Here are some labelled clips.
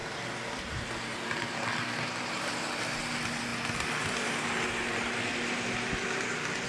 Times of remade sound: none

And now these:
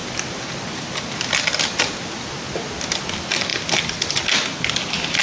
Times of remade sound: none

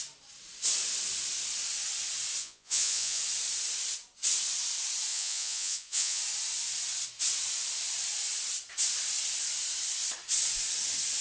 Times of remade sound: 2.4-3.2 (vocoder, Vocos); 5.1-6.2

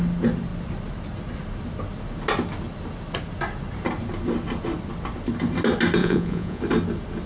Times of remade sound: 6.0-6.6 (vocoder, Vocos)

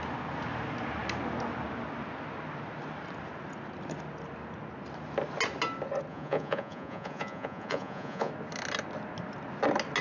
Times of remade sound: 6.1-8.3 (vocoder, Vocos)

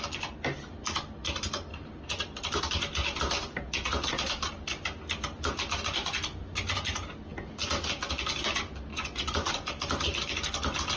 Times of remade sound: 8.9-9.5 (vocoder, Vocos)

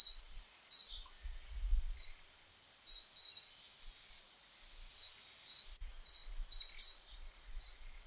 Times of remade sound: 0.0-1.7 (vocoder, Vocos); 4.1-4.9; 5.7-6.2; 7.0-8.1

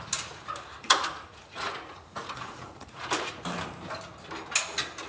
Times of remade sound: 0.8-3.3 (vocoder, Vocos)